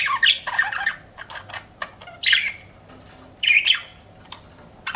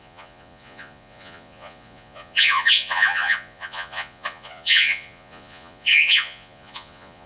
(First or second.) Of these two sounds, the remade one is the second